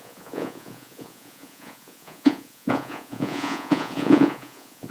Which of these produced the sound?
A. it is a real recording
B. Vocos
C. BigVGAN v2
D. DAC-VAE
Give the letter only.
B